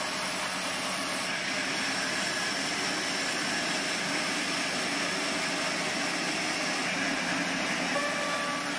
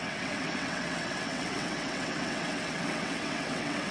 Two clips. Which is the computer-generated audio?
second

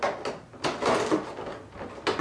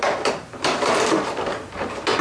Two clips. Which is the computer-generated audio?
second